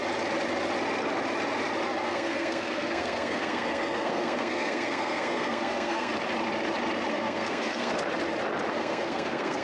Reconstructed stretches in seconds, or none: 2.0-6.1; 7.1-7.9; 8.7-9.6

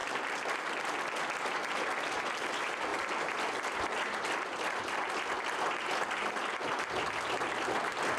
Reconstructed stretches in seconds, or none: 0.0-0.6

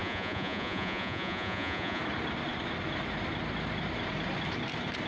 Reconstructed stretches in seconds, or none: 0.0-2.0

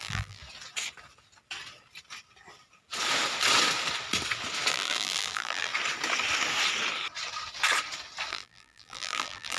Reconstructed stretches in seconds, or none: 0.0-0.4; 4.7-5.7; 8.3-9.6

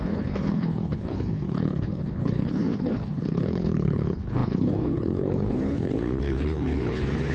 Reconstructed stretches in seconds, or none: 0.0-7.3

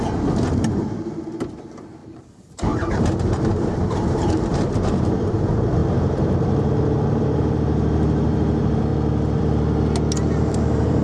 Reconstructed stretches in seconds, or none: 0.0-5.8; 7.2-8.9; 10.3-11.0